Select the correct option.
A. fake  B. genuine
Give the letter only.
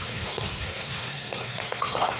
A